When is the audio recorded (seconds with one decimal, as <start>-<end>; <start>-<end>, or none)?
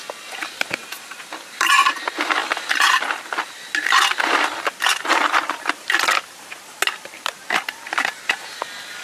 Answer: 0.0-2.4; 6.8-9.0